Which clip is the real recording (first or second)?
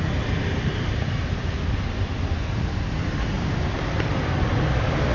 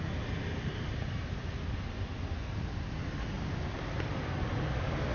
second